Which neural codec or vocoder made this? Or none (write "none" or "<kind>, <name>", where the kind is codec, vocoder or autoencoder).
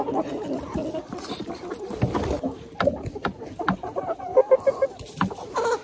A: none